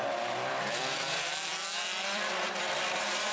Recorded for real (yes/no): no